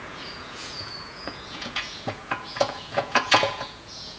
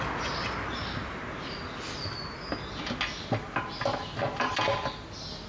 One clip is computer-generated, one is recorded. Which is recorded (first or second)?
second